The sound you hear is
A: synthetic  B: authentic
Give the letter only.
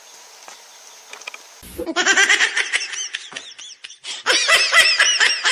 B